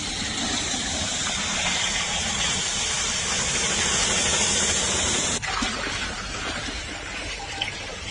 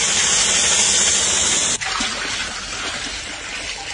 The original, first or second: second